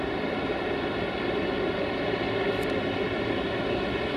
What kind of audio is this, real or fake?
real